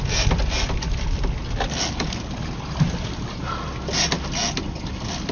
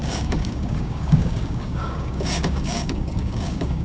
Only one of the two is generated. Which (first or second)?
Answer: second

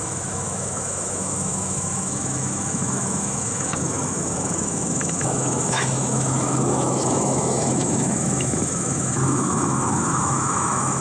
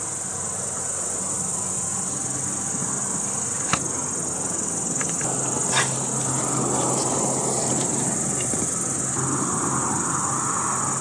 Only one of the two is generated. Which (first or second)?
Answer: first